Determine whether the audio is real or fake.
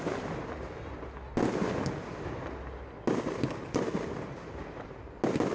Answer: real